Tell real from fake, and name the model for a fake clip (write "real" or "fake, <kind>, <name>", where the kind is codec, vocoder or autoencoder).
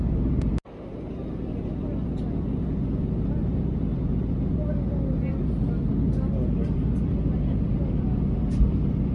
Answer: real